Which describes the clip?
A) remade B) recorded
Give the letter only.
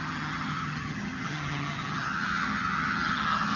A